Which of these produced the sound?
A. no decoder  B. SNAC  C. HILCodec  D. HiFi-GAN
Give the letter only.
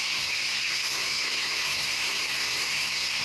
B